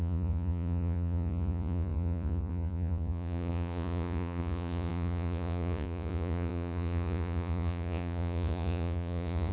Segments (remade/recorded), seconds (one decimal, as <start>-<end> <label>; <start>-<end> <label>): 0.0-9.5 remade